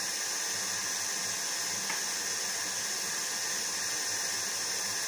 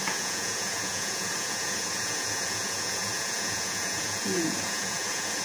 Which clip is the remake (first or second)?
second